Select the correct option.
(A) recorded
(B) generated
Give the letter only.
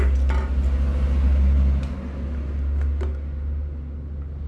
A